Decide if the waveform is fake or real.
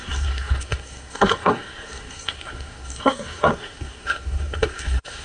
fake